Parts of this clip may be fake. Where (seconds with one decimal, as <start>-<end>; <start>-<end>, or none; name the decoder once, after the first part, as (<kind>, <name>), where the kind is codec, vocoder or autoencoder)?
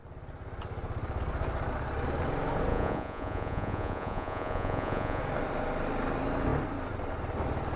2.7-5.2 (vocoder, Vocos)